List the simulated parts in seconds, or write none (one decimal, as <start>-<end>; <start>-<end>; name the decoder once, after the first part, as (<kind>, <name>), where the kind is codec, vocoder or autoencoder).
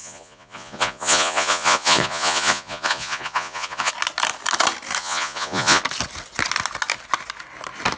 0.0-3.9 (vocoder, Vocos); 5.0-5.8